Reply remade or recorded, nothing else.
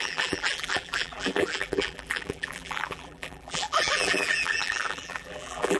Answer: remade